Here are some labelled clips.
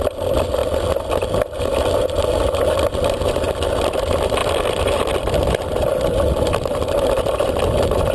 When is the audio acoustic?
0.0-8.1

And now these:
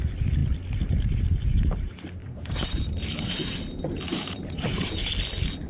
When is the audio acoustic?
0.0-2.2; 3.3-4.1; 5.1-5.7

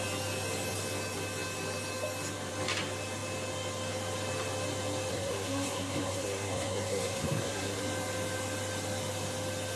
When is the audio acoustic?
0.0-5.1; 7.8-9.8

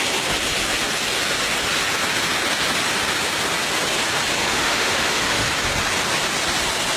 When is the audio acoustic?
0.0-4.4; 5.5-7.0

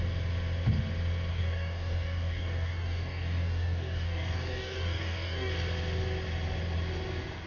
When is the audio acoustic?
0.0-1.3; 5.5-7.5

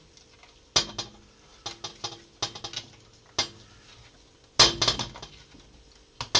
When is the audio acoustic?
0.0-6.4